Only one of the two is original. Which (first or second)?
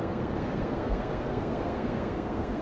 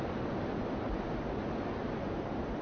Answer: second